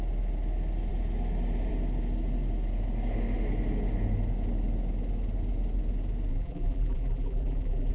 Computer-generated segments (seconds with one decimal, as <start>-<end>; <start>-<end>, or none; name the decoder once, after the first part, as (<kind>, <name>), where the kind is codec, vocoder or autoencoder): 6.3-7.9 (vocoder, BigVGAN v2)